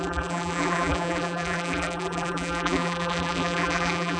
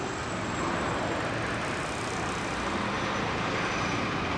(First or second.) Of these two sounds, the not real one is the first